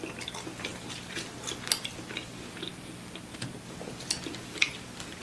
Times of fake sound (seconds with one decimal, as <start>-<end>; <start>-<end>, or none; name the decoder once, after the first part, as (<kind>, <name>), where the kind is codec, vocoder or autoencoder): 0.7-1.4 (vocoder, BigVGAN v2)